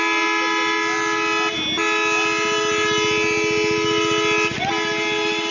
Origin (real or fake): real